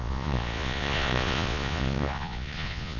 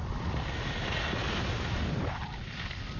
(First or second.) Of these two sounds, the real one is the second